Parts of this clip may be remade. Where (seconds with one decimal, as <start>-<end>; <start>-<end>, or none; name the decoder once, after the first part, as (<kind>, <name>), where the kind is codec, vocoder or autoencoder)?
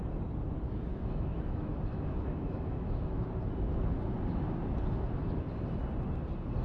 0.9-3.3 (autoencoder, DAC-VAE)